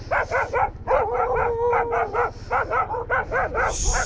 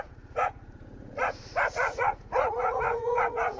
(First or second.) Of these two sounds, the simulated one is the second